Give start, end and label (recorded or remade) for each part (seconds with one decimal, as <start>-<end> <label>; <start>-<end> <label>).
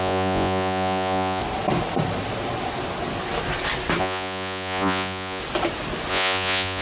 0.0-1.4 remade; 1.4-4.0 recorded; 4.0-5.4 remade; 5.4-6.1 recorded; 6.1-6.8 remade